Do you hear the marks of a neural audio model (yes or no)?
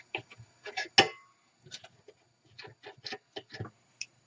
no